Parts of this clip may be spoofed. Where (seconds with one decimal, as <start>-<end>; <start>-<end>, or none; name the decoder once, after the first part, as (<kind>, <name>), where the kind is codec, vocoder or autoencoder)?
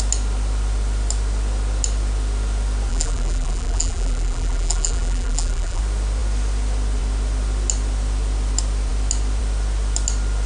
2.9-5.8 (vocoder, BigVGAN v2)